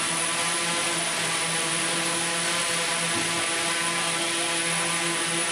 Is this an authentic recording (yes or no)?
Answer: yes